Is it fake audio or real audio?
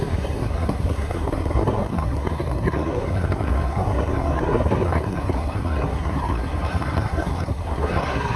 fake